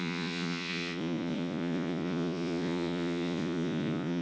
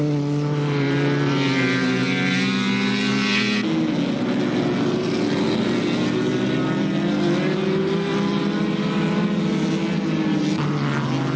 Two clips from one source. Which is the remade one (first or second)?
first